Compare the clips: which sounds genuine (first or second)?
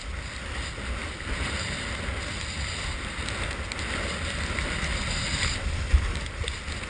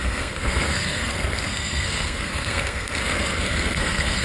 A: first